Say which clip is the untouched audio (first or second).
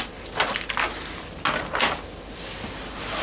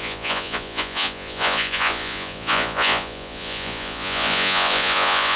first